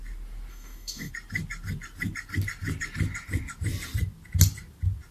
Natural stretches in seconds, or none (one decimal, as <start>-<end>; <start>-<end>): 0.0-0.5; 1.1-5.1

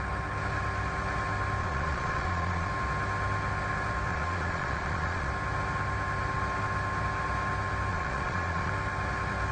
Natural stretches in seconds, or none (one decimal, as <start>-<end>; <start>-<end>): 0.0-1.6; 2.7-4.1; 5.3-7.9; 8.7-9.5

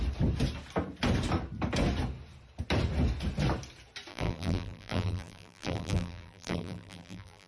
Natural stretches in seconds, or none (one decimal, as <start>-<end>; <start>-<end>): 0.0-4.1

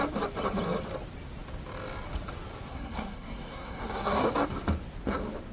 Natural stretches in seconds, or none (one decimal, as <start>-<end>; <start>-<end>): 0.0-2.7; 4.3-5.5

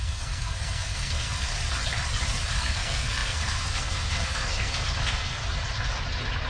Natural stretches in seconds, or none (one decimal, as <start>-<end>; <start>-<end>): 1.5-2.5; 5.4-6.5

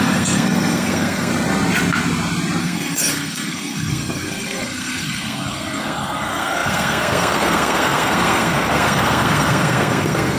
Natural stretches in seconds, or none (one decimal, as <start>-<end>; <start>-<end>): 1.3-2.6